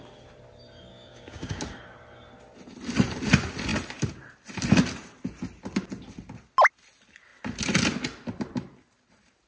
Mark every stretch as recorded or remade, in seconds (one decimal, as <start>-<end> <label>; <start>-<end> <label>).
0.0-0.9 recorded; 0.9-1.6 remade; 1.6-9.5 recorded

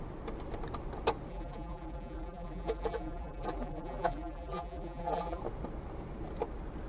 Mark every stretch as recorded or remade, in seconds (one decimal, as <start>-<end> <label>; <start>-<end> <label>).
0.0-1.3 recorded; 1.3-5.4 remade; 5.4-6.9 recorded

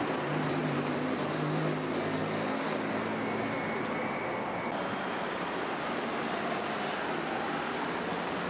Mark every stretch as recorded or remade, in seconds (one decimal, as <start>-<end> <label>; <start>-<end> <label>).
0.0-0.6 recorded; 0.6-1.3 remade; 1.3-8.5 recorded

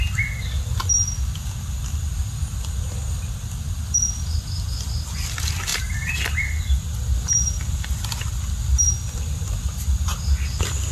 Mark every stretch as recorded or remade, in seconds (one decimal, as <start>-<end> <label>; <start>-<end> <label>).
0.0-10.9 recorded